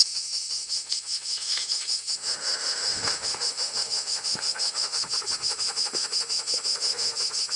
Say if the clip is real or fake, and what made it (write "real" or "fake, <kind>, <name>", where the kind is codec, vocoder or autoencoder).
fake, autoencoder, DAC-VAE